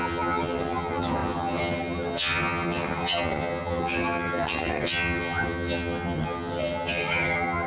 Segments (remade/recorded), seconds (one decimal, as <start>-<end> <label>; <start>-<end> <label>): 0.0-7.7 remade

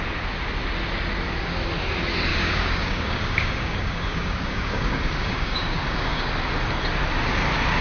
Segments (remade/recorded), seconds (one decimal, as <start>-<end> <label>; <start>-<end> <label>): 0.0-2.3 recorded; 2.3-6.3 remade; 6.3-7.8 recorded

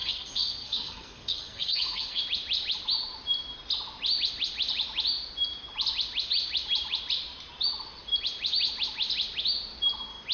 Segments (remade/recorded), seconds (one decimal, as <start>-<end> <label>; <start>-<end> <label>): 0.0-2.2 remade; 2.2-10.3 recorded

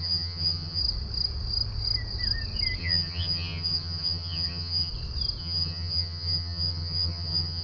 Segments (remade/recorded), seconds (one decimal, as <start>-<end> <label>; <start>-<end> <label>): 0.0-0.8 remade; 0.8-2.8 recorded; 2.8-4.9 remade; 4.9-5.4 recorded; 5.4-7.6 remade

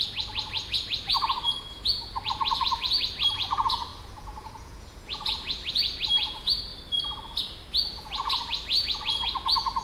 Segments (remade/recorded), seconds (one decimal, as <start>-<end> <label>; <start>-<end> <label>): 0.0-6.7 remade; 6.7-8.0 recorded; 8.0-9.8 remade

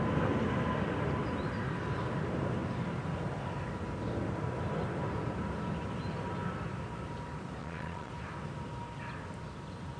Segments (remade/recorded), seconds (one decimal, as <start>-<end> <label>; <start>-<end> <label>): 0.0-7.6 recorded; 7.6-8.1 remade; 8.1-10.0 recorded

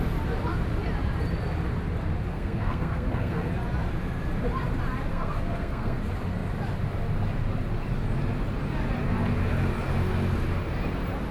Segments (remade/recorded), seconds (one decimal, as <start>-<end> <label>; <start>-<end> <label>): 0.0-2.3 recorded; 2.3-3.5 remade; 3.5-5.1 recorded; 5.1-6.0 remade; 6.0-11.3 recorded